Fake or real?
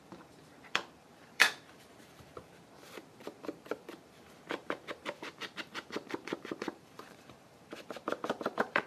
fake